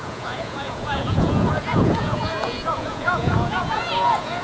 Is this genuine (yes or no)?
no